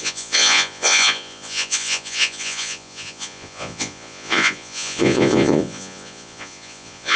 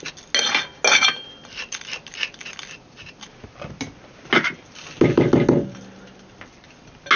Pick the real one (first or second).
second